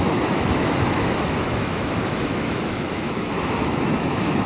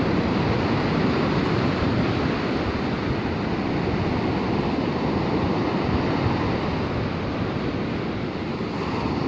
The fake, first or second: first